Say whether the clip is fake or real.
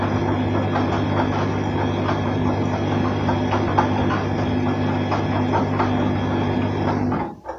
real